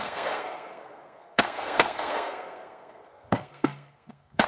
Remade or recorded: remade